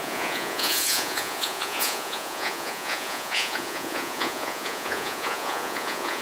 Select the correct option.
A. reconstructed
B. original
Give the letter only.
A